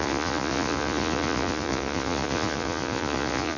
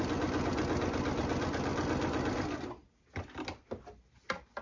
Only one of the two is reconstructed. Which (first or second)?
first